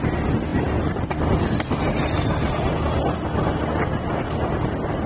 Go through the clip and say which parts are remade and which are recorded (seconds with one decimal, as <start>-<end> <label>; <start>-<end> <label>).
0.0-5.1 recorded